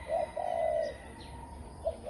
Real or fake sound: real